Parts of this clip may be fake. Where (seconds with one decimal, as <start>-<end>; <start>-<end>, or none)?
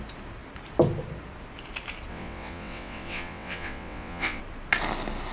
2.1-4.4